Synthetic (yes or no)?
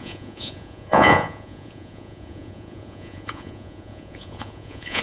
yes